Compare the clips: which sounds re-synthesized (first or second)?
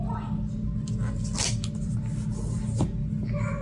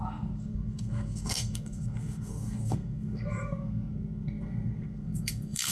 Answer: second